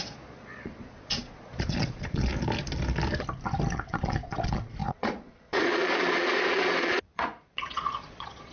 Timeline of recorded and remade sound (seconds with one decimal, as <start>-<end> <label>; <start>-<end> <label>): 0.0-2.3 remade; 2.3-3.7 recorded; 3.7-8.5 remade

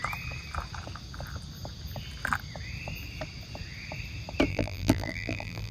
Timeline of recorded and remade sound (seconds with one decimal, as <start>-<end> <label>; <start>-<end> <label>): 0.0-4.5 recorded; 4.5-5.7 remade